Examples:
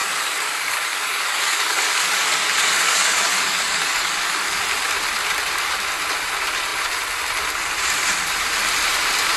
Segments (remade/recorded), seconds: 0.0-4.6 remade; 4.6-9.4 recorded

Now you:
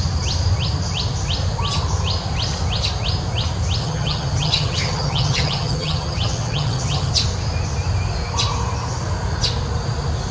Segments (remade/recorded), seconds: 0.0-3.8 recorded; 3.8-7.1 remade; 7.1-10.3 recorded

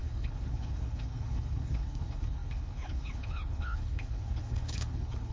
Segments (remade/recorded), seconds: 0.0-5.3 remade

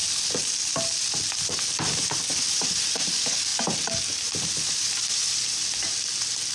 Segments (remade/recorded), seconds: 0.0-2.3 recorded; 2.3-3.5 remade; 3.5-4.7 recorded; 4.7-6.5 remade

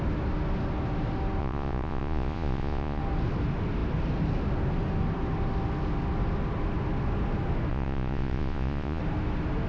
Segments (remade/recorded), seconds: 0.0-1.4 recorded; 1.4-3.0 remade; 3.0-7.7 recorded; 7.7-9.0 remade; 9.0-9.7 recorded

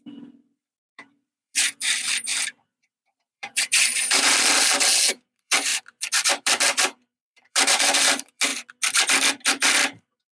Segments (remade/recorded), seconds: 0.0-8.5 remade; 8.5-9.3 recorded; 9.3-10.3 remade

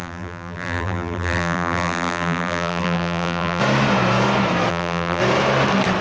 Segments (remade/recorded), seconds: 0.0-3.6 remade; 3.6-4.7 recorded; 4.7-5.2 remade; 5.2-6.0 recorded